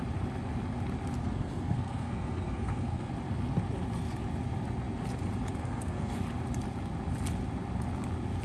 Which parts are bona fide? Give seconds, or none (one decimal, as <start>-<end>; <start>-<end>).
0.0-1.2; 3.1-5.6; 6.2-8.4